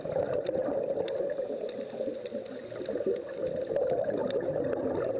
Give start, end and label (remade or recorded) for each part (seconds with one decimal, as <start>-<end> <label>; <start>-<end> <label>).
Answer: 0.0-5.2 recorded